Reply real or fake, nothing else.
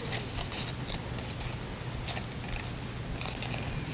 real